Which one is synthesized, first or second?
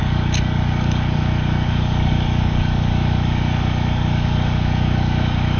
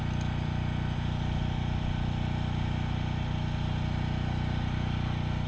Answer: first